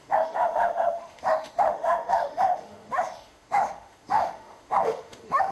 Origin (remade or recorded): remade